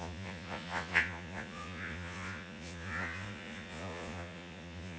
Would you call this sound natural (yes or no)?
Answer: no